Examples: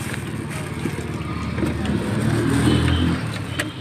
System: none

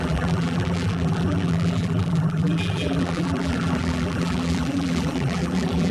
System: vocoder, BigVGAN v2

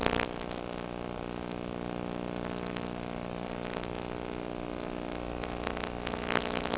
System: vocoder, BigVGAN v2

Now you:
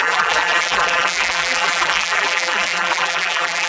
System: vocoder, BigVGAN v2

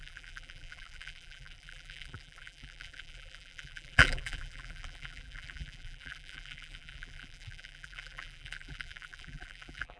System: vocoder, BigVGAN v2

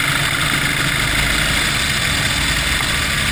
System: none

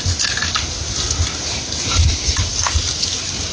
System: none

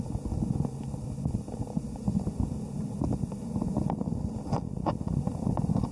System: none